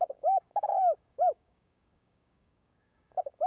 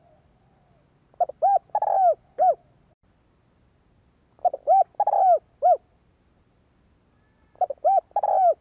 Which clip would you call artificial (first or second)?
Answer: first